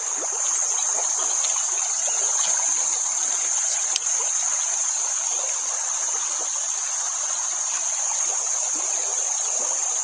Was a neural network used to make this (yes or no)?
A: no